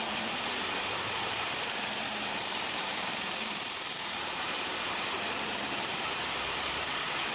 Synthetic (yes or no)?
yes